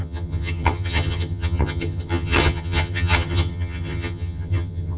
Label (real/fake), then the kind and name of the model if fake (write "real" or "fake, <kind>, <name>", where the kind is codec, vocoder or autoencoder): fake, vocoder, HiFi-GAN